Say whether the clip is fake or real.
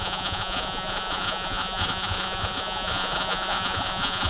fake